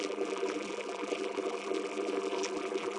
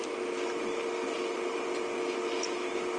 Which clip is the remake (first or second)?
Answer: first